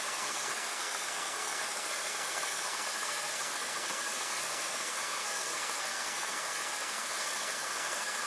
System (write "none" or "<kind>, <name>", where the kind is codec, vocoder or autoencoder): codec, SNAC